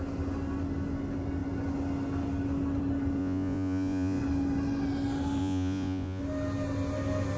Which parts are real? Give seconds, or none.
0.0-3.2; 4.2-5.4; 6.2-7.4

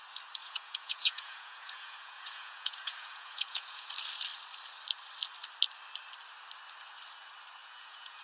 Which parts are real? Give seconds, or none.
0.0-0.4; 3.9-7.6

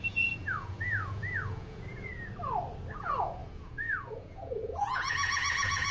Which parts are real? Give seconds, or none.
2.1-3.0

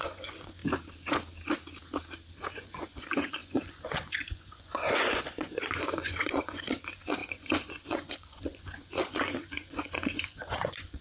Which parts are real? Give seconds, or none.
0.6-2.5

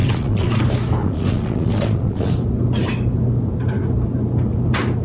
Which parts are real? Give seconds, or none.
0.6-1.0; 2.3-5.0